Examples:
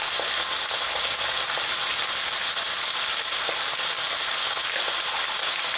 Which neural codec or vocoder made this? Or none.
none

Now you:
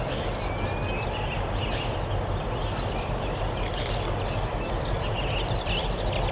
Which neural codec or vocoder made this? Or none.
none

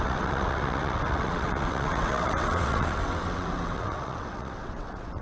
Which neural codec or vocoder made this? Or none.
vocoder, WaveNeXt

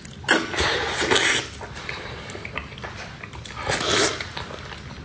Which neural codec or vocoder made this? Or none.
none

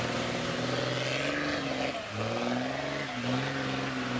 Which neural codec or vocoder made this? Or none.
none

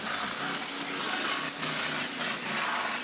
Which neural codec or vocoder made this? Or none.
none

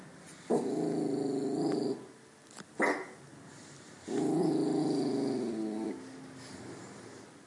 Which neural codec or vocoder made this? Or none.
none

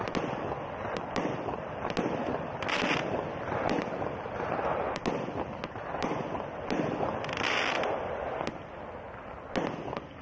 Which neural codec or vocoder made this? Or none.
none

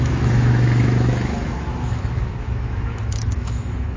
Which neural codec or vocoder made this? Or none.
autoencoder, DAC-VAE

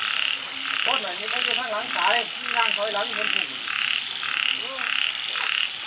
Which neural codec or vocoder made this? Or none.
none